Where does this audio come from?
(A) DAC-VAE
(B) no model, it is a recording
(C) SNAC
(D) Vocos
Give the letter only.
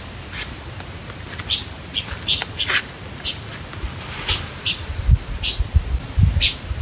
B